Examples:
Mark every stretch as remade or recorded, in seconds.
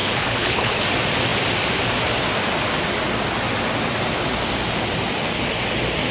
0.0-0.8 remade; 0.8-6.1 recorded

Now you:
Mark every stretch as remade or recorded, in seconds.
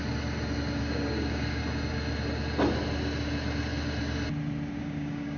0.0-0.8 recorded; 0.8-1.6 remade; 1.6-4.8 recorded; 4.8-5.4 remade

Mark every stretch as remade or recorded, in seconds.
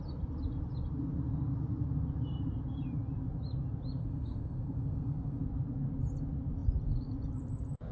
0.0-4.0 recorded; 4.0-5.4 remade; 5.4-7.9 recorded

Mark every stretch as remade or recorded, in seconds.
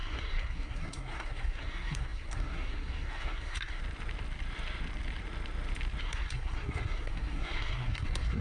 0.0-3.8 remade; 3.8-6.0 recorded; 6.0-8.4 remade